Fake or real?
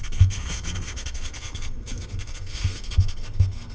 fake